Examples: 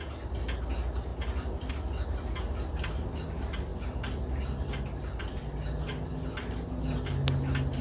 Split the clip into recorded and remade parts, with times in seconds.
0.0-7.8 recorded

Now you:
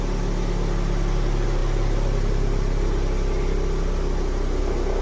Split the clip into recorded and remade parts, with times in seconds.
0.0-5.0 recorded

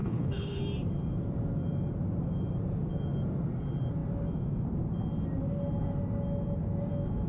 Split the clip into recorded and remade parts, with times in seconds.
0.0-0.6 remade; 0.6-7.3 recorded

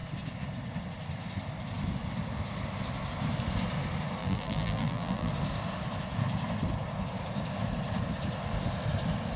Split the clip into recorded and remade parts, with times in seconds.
0.0-4.2 recorded; 4.2-5.3 remade; 5.3-9.4 recorded